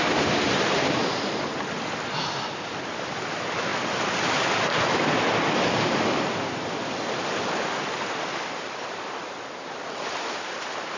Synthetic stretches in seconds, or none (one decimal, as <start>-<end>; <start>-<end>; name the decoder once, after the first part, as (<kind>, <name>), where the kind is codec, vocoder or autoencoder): 0.0-3.7 (vocoder, BigVGAN v2); 5.7-11.0